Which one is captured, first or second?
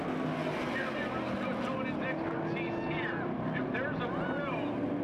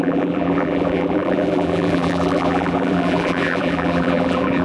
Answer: first